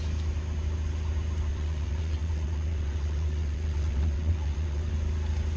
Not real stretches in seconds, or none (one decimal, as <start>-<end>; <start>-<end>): 1.5-4.9